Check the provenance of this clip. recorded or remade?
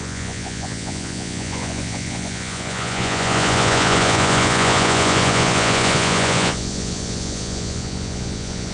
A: remade